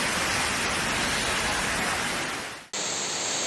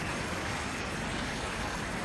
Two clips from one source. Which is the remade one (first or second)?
second